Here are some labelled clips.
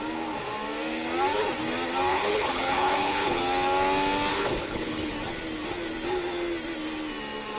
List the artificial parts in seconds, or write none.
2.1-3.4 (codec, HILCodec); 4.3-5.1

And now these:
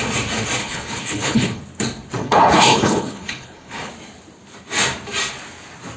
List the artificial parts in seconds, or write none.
0.6-1.6 (codec, HILCodec); 2.2-3.9